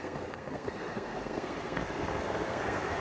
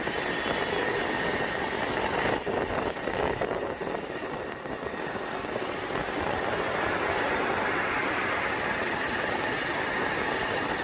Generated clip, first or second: first